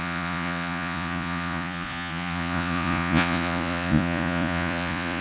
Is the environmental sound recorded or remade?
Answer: remade